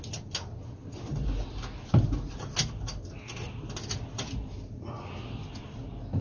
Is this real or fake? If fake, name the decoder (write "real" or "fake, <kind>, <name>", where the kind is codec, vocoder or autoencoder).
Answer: real